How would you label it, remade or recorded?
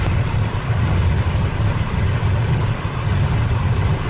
recorded